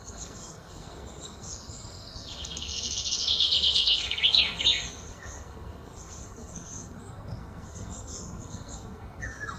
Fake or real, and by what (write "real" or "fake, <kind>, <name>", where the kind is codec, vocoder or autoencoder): fake, codec, SNAC